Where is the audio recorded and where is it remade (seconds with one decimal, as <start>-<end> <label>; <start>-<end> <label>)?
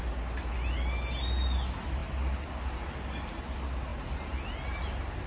0.0-5.3 recorded